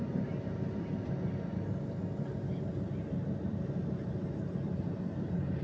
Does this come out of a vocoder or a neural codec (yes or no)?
no